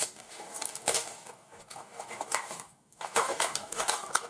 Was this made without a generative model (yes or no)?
no